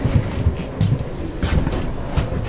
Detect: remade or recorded recorded